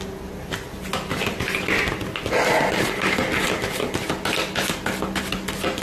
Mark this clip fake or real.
real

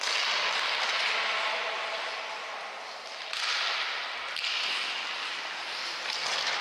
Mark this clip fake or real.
real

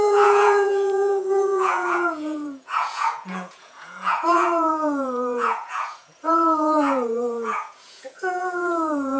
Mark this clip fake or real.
fake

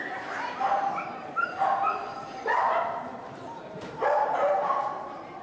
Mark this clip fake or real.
fake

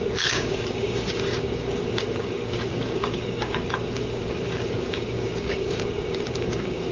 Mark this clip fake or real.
fake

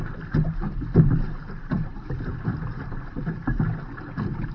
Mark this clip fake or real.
real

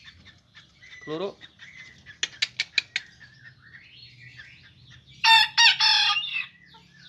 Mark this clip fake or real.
real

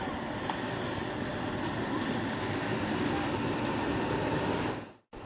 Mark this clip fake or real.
real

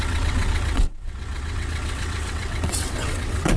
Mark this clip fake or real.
fake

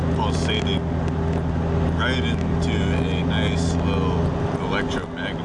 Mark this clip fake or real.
real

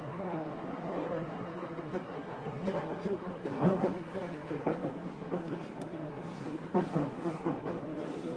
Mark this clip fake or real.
fake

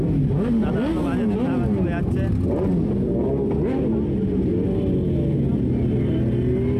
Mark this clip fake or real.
real